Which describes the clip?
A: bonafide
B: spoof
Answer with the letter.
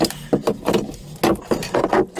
A